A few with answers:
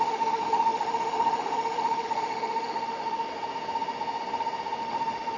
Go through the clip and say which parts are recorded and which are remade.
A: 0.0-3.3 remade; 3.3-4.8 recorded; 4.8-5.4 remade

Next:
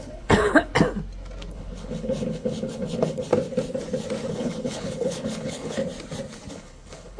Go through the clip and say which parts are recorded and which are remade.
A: 0.0-0.7 remade; 0.7-1.5 recorded; 1.5-3.3 remade; 3.3-4.3 recorded; 4.3-5.8 remade; 5.8-6.5 recorded; 6.5-7.2 remade

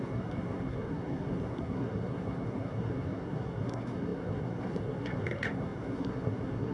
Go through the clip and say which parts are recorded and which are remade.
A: 0.0-6.7 remade